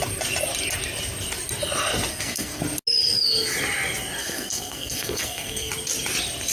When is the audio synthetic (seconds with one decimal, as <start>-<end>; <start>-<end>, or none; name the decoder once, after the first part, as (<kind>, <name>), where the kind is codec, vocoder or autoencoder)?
2.1-2.6 (codec, SNAC); 4.2-5.7